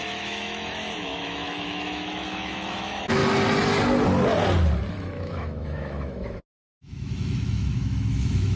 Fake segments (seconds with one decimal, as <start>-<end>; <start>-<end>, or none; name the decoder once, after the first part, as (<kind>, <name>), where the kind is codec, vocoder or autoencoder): 0.0-3.2 (autoencoder, DAC-VAE); 4.9-8.6